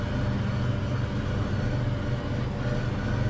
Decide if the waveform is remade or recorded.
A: recorded